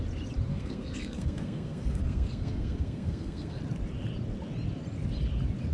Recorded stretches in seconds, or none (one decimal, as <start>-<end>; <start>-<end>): 0.0-0.5; 3.6-5.7